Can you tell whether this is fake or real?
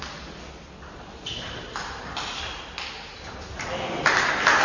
real